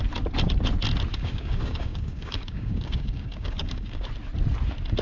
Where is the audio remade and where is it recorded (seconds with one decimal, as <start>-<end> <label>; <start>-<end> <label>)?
0.0-1.1 recorded; 1.1-4.1 remade; 4.1-5.0 recorded